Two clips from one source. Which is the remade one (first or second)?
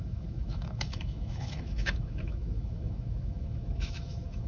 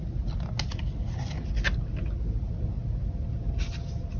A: first